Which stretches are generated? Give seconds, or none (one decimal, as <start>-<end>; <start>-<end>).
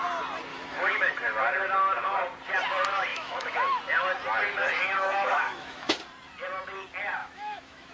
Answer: 0.5-1.1; 3.1-3.8; 4.8-6.0; 7.2-7.9